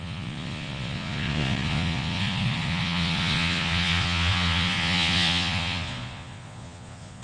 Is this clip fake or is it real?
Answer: fake